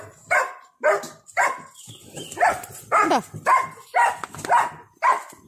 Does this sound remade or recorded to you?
recorded